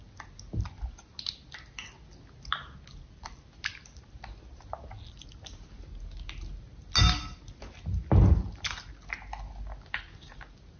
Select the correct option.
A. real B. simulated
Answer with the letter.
A